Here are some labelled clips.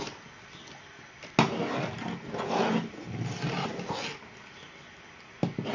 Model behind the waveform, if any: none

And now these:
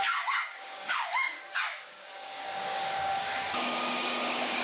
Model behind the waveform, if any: codec, DAC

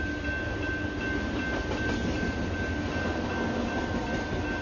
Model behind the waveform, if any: none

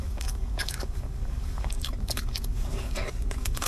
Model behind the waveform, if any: codec, DAC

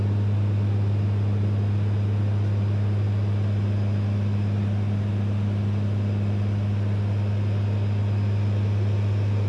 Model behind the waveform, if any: none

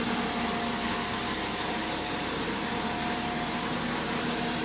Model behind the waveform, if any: none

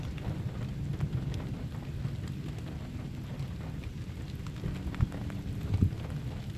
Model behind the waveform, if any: none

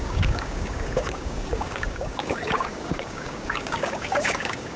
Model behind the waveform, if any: codec, DAC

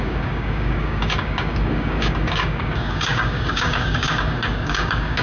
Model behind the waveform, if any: codec, DAC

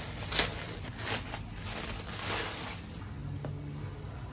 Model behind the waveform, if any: none